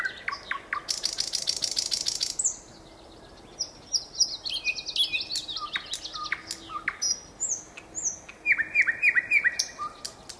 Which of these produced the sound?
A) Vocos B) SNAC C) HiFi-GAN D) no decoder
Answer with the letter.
D